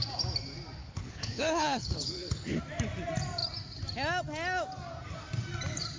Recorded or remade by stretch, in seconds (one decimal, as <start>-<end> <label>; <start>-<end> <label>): 0.0-0.8 recorded; 0.8-2.6 remade; 2.6-6.0 recorded